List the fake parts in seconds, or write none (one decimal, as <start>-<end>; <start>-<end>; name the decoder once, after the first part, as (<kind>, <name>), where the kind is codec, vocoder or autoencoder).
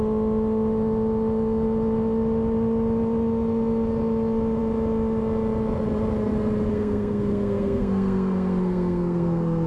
6.7-9.7 (codec, SNAC)